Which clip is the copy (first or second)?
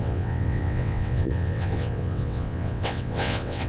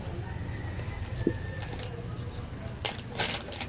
first